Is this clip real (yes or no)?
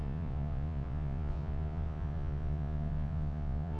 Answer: no